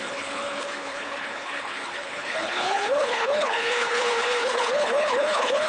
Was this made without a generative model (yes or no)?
no